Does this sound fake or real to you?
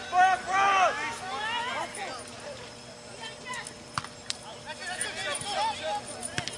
real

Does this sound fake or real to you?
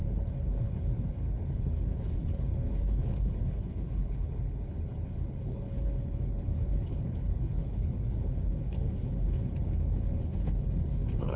fake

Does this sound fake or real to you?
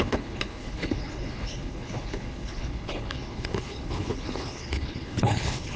fake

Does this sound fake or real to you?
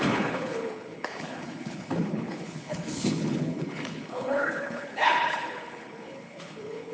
fake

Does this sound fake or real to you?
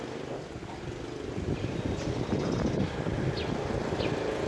real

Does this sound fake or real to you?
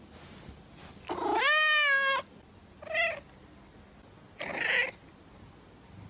real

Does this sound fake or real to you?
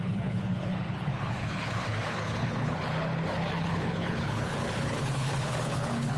fake